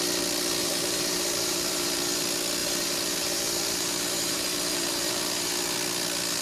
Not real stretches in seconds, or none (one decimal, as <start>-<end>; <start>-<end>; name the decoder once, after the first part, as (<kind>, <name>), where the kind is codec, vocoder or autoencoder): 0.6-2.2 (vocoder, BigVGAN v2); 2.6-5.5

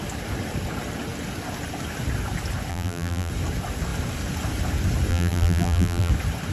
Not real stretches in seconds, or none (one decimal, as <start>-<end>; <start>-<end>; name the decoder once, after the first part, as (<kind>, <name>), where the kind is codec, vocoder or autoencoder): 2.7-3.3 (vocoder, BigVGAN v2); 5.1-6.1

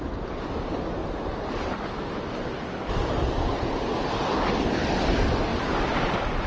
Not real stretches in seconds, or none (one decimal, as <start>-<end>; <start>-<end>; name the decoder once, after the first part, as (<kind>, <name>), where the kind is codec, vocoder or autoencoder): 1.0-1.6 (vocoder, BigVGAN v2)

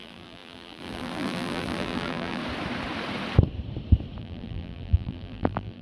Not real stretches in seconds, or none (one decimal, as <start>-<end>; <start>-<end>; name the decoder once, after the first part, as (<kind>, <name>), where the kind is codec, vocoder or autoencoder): 0.0-2.4 (vocoder, BigVGAN v2); 4.2-5.8